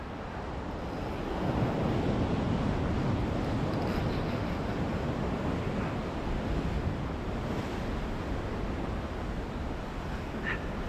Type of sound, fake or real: real